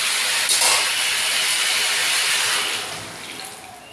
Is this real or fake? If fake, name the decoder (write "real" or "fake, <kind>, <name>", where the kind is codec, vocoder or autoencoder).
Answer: real